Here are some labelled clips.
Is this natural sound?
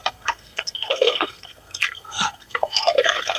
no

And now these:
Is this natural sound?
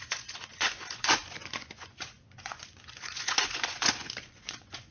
no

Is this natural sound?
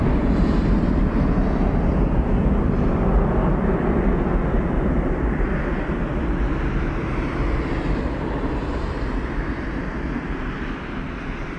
yes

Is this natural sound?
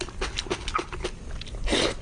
yes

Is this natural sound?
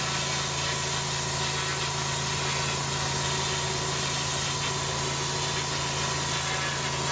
yes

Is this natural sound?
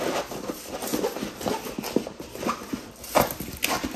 yes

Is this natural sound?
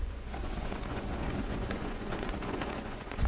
no